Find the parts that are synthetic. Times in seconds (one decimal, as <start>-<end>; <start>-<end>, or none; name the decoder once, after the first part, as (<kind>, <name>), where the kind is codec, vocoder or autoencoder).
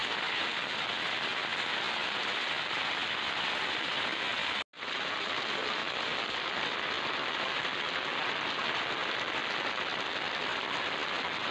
none